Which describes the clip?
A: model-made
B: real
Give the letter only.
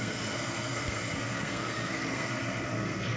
A